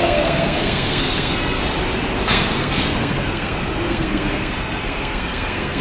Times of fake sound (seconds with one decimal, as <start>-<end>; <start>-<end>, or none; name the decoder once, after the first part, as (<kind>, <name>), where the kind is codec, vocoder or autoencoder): 0.0-1.6 (codec, SNAC); 2.2-5.8